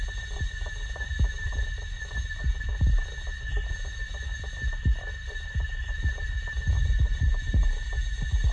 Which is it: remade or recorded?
recorded